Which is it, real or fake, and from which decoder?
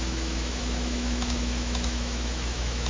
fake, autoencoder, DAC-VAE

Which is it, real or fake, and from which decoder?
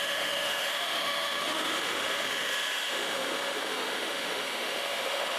fake, autoencoder, DAC-VAE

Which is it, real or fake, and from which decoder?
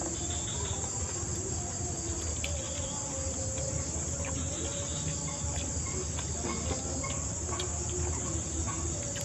real